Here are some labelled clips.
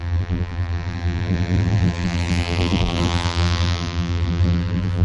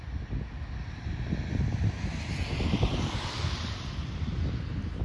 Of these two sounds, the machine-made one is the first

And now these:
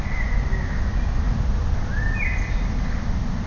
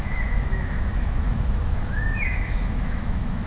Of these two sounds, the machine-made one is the second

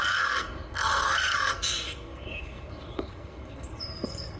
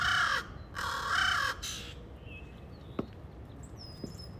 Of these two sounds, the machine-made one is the first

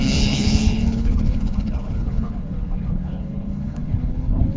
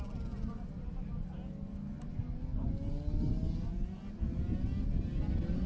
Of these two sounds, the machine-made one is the first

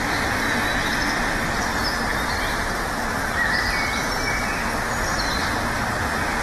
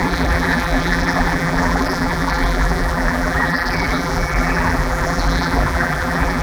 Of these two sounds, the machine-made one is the second